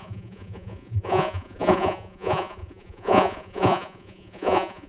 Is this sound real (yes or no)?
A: no